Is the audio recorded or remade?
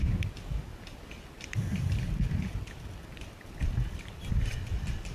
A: remade